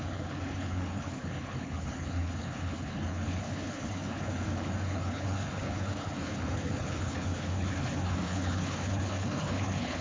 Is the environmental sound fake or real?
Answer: fake